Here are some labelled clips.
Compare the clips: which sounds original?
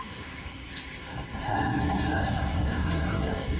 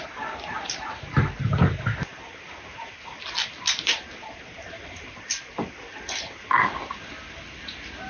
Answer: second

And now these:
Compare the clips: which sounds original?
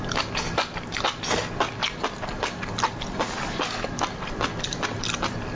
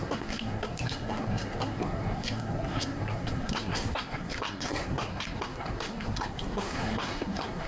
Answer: first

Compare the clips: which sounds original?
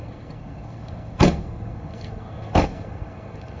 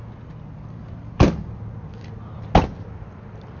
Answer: second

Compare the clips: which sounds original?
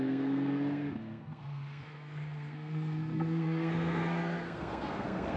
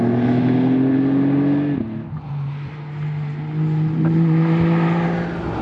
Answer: second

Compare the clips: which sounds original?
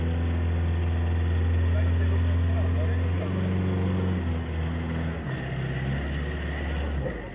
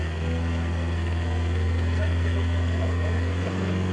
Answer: first